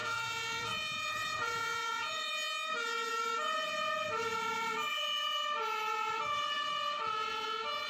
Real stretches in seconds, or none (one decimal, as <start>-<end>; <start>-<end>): 2.3-7.9